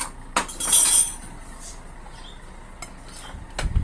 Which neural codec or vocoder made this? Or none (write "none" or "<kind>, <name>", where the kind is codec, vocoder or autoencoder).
none